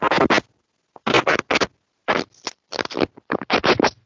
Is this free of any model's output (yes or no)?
yes